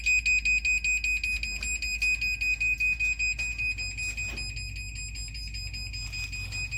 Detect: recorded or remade recorded